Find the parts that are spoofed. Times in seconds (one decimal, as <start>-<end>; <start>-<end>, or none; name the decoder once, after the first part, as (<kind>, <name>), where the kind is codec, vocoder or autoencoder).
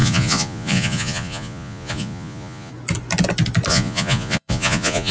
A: 0.0-2.7 (vocoder, Vocos); 3.7-5.1